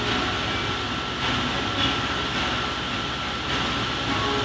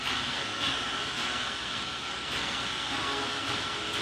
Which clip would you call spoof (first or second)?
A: second